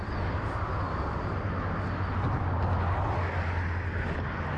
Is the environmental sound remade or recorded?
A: recorded